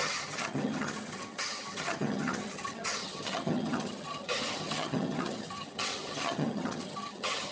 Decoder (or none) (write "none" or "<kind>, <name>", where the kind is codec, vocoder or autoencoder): vocoder, HiFi-GAN